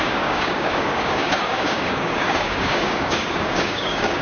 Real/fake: fake